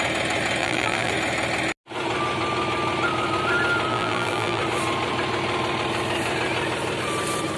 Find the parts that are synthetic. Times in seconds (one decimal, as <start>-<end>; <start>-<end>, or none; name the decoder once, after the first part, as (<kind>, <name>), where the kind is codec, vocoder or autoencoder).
0.6-1.1 (vocoder, BigVGAN v2); 3.9-4.6